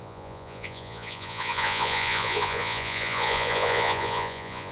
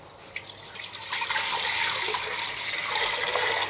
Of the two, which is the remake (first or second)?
first